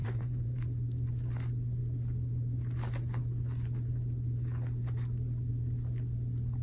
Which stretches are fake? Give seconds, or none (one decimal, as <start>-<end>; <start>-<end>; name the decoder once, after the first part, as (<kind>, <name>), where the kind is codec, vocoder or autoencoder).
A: 0.0-0.6 (vocoder, Vocos)